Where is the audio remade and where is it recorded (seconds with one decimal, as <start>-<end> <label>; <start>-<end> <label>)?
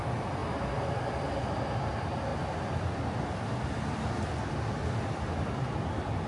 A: 0.0-6.3 recorded